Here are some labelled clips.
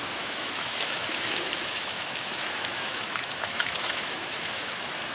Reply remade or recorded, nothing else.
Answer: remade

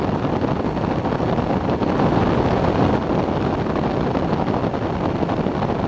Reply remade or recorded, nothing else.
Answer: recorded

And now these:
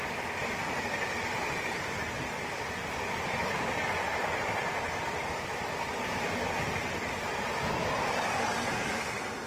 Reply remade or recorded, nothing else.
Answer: recorded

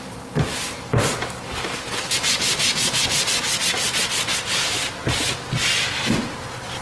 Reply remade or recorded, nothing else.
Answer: recorded